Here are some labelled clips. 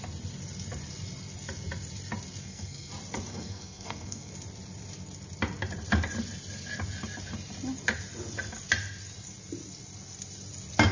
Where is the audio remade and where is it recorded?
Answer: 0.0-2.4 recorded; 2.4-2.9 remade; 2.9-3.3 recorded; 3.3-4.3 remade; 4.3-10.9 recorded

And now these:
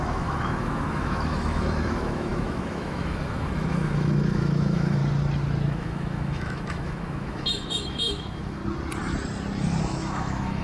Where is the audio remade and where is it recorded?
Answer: 0.0-5.0 remade; 5.0-5.7 recorded; 5.7-8.6 remade; 8.6-9.8 recorded; 9.8-10.6 remade